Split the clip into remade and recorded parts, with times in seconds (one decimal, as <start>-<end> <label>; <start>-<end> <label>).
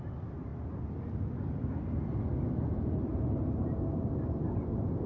0.0-5.1 recorded